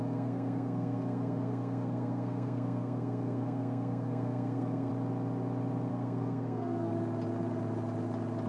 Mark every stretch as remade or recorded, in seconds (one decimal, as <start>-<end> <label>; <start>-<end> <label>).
0.0-4.9 remade; 4.9-5.9 recorded; 5.9-6.9 remade; 6.9-8.5 recorded